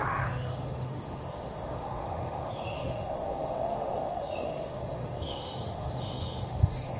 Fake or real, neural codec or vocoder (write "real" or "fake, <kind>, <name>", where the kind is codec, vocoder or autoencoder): fake, autoencoder, DAC-VAE